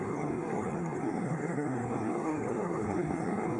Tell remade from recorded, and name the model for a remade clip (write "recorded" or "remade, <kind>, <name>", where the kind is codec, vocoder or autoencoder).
remade, codec, SNAC